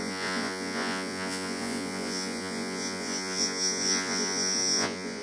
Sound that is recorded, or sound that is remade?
remade